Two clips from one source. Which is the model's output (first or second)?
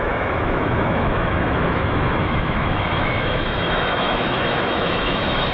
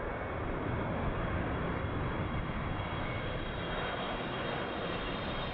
first